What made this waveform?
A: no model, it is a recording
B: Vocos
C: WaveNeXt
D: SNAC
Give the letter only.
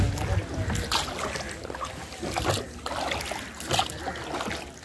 A